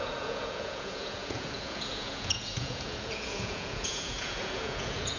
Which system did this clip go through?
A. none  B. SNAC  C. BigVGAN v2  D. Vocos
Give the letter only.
D